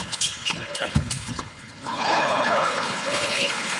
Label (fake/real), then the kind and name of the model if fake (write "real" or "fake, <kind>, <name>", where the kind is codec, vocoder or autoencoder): fake, codec, HILCodec